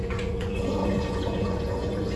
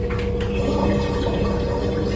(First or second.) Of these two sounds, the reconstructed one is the first